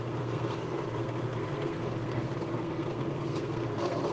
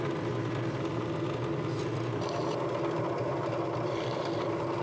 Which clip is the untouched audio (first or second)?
second